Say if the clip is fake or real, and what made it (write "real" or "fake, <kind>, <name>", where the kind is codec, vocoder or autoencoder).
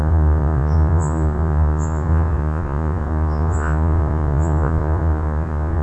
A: fake, vocoder, Vocos